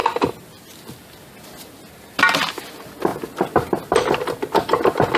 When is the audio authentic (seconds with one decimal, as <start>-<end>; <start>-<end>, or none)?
0.0-5.2